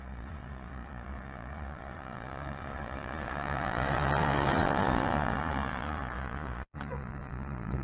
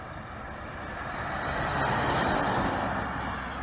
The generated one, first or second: first